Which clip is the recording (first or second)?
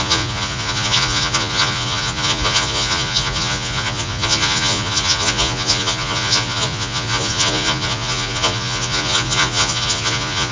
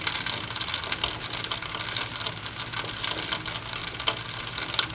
second